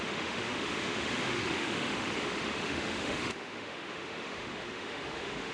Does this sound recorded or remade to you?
remade